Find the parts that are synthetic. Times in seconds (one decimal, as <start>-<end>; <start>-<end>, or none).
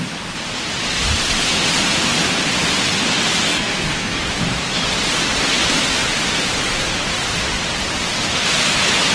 3.5-4.2